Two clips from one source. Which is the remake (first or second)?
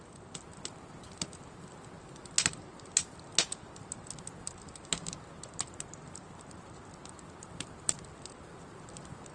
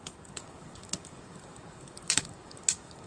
second